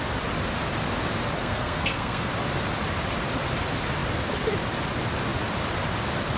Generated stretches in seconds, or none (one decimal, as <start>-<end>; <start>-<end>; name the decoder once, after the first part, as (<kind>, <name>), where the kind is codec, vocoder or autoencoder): 1.4-2.3 (codec, SNAC)